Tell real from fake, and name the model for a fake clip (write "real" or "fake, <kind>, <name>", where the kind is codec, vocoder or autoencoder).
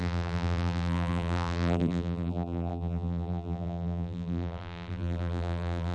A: fake, vocoder, BigVGAN v2